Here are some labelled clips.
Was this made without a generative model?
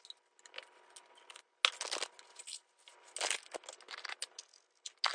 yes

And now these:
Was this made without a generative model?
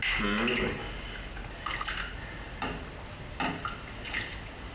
yes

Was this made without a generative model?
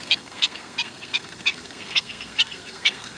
no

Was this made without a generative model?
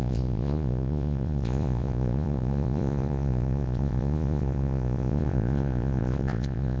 no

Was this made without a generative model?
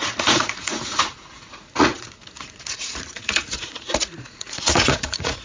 no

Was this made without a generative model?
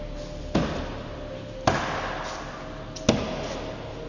yes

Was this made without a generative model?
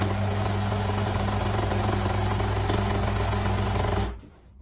yes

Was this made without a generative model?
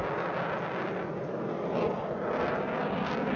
yes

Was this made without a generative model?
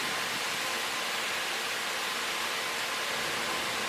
yes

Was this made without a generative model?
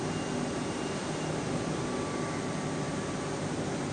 yes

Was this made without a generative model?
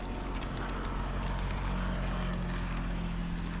yes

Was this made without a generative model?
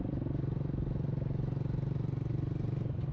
yes